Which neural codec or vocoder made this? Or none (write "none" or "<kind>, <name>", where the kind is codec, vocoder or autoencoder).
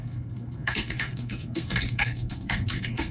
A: codec, SNAC